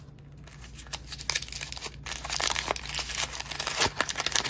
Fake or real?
real